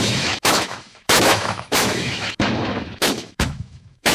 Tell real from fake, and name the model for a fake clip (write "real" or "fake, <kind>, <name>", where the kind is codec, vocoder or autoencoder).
fake, autoencoder, DAC-VAE